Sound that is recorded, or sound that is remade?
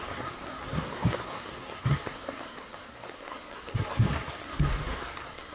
remade